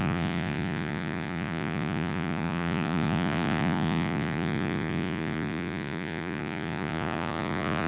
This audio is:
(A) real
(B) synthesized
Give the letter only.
B